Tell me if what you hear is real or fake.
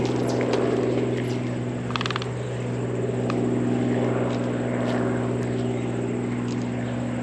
real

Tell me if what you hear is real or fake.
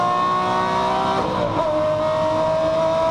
real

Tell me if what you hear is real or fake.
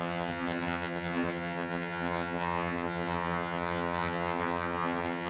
fake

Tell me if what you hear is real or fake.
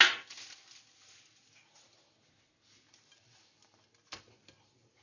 real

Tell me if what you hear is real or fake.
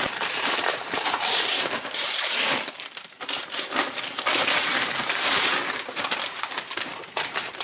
fake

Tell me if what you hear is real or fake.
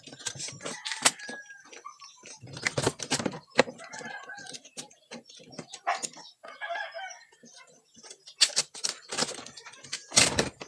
real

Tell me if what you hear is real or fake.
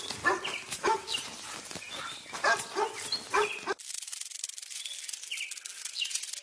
real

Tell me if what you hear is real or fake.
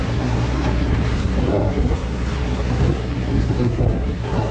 fake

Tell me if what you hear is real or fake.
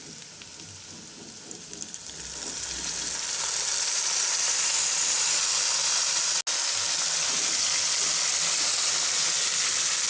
real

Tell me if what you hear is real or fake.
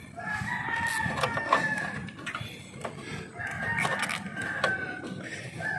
real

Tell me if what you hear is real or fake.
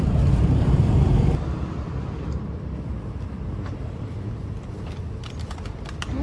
fake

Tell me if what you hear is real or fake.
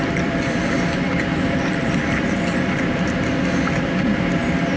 fake